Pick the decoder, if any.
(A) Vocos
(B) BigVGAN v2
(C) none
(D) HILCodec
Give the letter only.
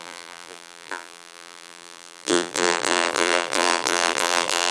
B